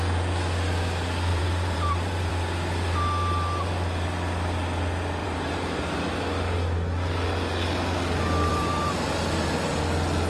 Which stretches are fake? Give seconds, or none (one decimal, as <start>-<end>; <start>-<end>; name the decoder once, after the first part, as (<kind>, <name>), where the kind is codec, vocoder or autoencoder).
1.3-2.3 (vocoder, BigVGAN v2); 5.2-5.8; 8.5-9.8